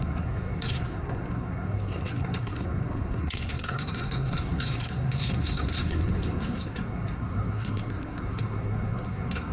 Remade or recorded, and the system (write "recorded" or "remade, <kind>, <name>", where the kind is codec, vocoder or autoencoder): remade, codec, SNAC